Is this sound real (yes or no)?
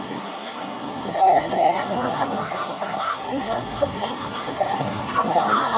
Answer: no